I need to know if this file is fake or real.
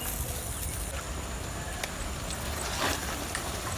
real